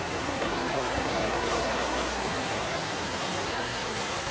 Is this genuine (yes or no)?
no